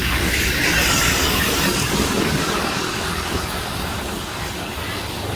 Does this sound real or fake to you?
fake